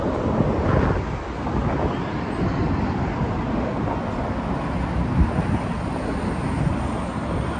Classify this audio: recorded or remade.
recorded